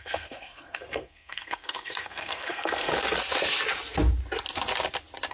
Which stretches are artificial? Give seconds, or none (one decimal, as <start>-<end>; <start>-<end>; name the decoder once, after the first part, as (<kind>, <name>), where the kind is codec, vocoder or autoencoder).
0.0-2.9 (codec, SNAC)

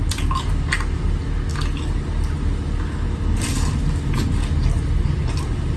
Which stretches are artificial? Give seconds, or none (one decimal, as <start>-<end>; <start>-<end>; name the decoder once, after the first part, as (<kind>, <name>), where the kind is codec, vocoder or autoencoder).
none